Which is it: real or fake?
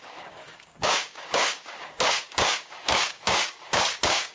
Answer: fake